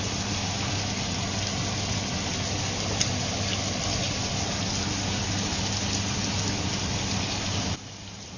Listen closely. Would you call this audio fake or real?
real